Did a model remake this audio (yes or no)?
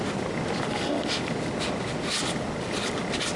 no